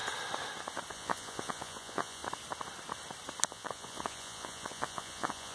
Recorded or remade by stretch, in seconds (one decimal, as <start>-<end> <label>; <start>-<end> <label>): 0.0-0.9 recorded; 0.9-2.2 remade; 2.2-3.5 recorded; 3.5-5.5 remade